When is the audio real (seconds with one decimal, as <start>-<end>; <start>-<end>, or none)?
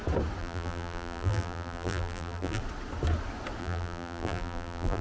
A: 0.0-0.4; 2.6-3.6